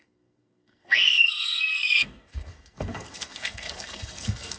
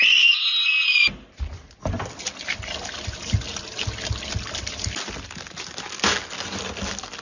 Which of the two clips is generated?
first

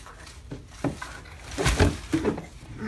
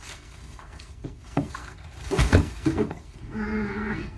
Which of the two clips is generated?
second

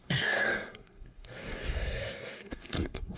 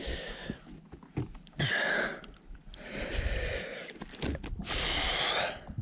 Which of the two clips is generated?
first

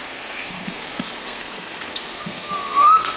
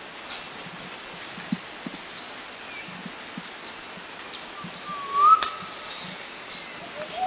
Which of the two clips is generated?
first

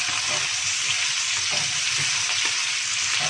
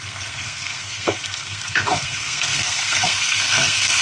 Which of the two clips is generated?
second